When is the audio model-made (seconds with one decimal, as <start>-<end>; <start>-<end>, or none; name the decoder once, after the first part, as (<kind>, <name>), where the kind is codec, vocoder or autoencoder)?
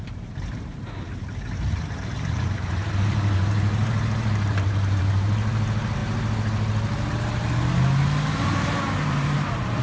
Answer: 0.0-6.0 (vocoder, BigVGAN v2); 8.4-9.8